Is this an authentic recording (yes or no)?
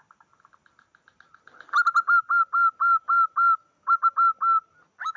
yes